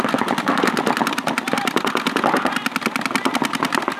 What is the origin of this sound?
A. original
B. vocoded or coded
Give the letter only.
A